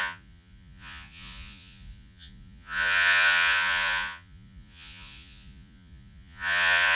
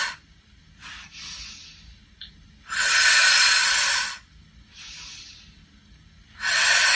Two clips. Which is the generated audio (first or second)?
first